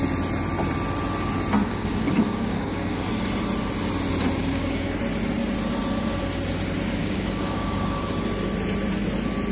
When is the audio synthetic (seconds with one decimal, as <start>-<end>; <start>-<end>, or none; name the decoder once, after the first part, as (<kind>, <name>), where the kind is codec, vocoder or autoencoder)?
1.6-3.1 (codec, DAC); 4.4-5.0; 7.0-8.1